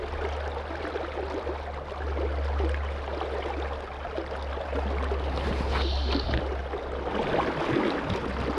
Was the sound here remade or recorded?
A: recorded